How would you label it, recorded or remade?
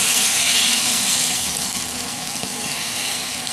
remade